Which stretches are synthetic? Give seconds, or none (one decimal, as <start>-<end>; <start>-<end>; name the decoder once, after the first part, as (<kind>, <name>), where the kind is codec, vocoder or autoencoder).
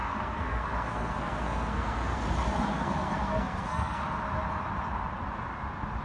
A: 0.0-2.2 (codec, SNAC); 2.7-4.0